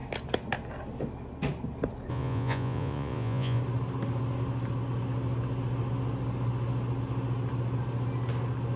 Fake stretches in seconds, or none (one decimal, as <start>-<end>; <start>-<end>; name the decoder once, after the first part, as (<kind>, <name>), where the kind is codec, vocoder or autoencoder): 2.1-3.6 (vocoder, Vocos)

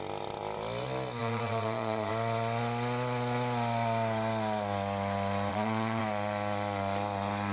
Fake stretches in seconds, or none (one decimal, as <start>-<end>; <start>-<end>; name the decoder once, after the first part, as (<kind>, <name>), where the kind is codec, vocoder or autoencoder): 1.2-2.1 (vocoder, Vocos); 5.5-6.0

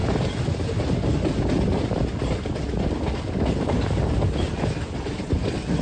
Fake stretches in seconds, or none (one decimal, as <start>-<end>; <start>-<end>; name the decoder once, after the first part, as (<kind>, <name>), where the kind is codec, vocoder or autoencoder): none

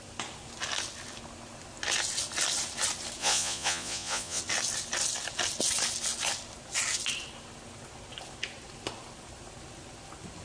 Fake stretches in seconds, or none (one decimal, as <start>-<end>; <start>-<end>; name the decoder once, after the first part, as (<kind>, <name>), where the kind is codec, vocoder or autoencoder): 3.2-4.4 (vocoder, Vocos)

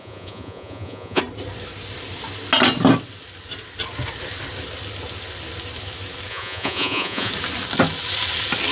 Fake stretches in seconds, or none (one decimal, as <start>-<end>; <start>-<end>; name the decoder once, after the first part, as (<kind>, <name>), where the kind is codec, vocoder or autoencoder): 0.0-1.2 (vocoder, Vocos); 6.3-7.3

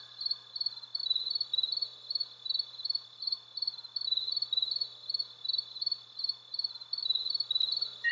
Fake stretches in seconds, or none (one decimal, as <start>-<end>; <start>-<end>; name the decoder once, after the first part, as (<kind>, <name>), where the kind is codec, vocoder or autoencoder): none

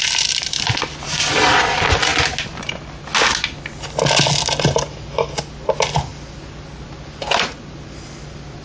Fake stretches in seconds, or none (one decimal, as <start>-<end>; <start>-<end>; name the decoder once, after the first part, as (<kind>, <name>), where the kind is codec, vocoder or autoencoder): none

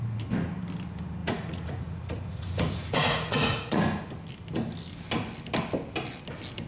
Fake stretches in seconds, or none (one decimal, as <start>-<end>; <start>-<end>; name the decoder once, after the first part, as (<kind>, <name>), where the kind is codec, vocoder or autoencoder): 1.2-4.1 (vocoder, Vocos)